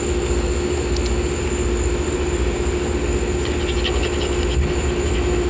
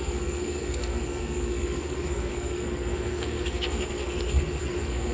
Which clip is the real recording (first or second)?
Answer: first